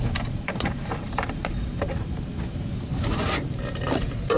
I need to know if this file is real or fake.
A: fake